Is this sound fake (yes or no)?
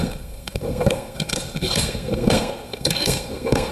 yes